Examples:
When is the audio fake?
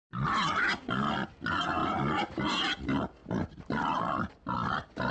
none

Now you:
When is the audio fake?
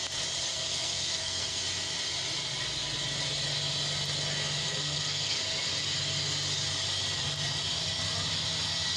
0.5-1.6 (codec, SNAC); 4.7-5.4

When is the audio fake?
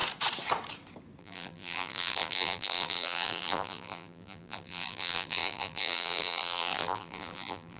1.2-7.8 (vocoder, BigVGAN v2)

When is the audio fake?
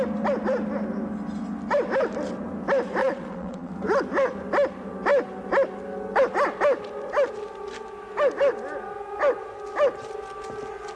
3.0-3.7 (vocoder, Vocos)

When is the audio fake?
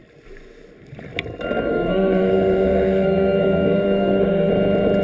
1.7-4.5 (codec, SNAC)